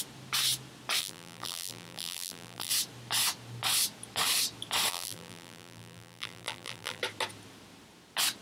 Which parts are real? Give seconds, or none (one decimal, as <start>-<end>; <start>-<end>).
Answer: 0.0-1.0; 2.7-4.9; 7.0-8.4